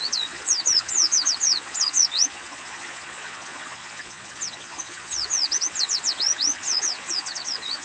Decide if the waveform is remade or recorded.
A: remade